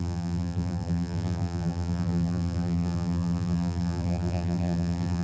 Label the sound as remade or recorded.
remade